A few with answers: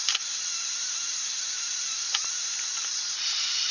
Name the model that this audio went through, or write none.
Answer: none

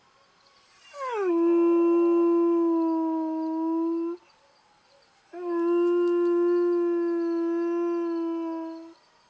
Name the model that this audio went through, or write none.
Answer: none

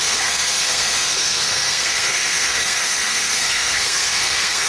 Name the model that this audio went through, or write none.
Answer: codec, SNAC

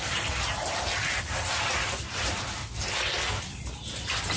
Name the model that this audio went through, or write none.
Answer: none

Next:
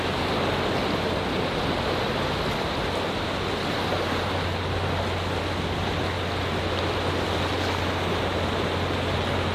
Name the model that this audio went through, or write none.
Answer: none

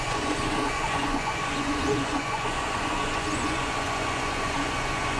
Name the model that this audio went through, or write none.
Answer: vocoder, Vocos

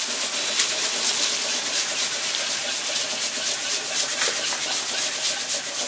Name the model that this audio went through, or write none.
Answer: none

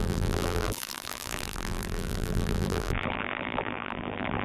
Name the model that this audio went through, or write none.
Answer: vocoder, BigVGAN v2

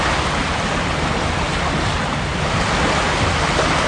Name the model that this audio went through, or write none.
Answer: none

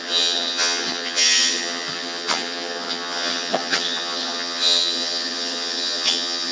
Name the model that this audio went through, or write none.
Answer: vocoder, HiFi-GAN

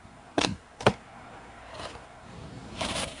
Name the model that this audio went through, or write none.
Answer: codec, SNAC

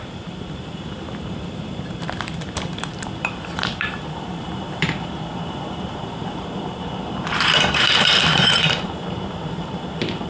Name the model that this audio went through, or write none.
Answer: vocoder, BigVGAN v2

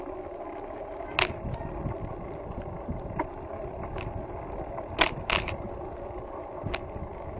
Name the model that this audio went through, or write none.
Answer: none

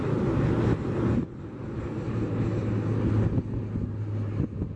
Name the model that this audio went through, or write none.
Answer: none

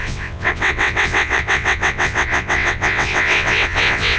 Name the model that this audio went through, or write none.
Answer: vocoder, WaveNeXt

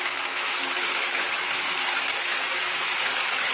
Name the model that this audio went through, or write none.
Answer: autoencoder, DAC-VAE